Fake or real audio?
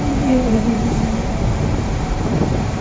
fake